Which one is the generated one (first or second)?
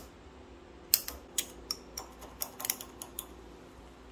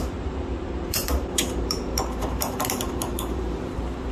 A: second